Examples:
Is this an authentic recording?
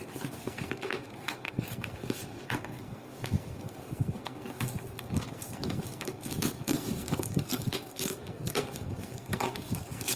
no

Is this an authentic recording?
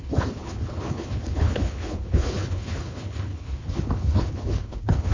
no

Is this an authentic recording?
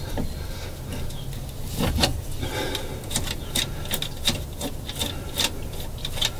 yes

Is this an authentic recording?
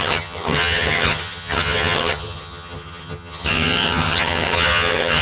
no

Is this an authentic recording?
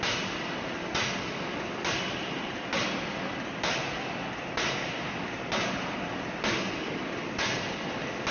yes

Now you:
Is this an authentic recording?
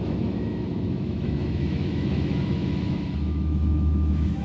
no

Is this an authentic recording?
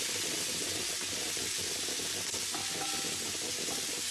yes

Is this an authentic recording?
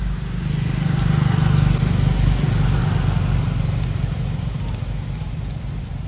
yes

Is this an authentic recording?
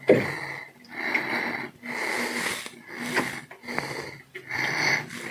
yes